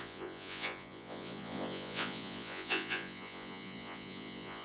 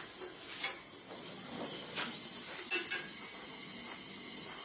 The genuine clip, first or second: second